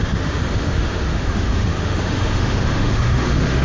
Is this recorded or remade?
remade